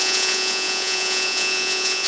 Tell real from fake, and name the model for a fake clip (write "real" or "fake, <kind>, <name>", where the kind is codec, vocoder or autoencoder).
fake, vocoder, Vocos